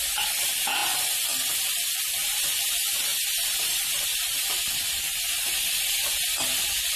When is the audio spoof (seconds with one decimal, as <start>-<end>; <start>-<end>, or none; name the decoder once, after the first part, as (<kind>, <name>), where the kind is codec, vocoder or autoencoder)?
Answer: 2.2-2.7 (vocoder, BigVGAN v2); 3.1-5.8